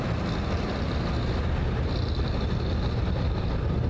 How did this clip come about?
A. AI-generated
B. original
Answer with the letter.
B